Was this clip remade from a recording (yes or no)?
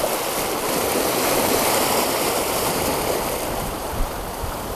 yes